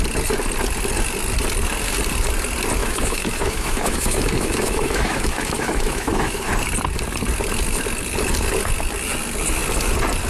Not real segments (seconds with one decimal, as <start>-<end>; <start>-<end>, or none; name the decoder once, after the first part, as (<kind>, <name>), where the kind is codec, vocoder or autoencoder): 2.8-6.5 (autoencoder, DAC-VAE)